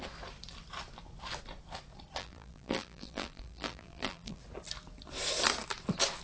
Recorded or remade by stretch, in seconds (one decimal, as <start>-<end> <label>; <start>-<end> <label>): 0.0-2.2 recorded; 2.2-4.4 remade; 4.4-6.2 recorded

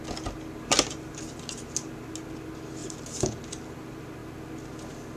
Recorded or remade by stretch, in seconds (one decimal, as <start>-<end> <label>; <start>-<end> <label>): 0.0-5.2 recorded